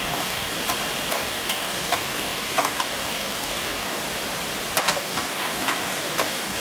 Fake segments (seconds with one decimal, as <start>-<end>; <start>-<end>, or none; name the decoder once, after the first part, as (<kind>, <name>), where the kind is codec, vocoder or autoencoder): 0.0-0.5 (codec, DAC); 1.1-4.0; 4.8-6.6